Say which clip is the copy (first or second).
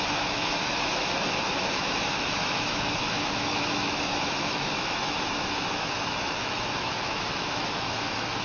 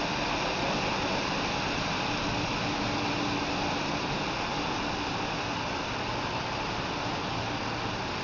first